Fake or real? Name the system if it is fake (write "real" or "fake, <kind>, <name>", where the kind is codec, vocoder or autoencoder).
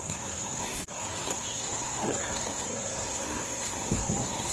fake, codec, SNAC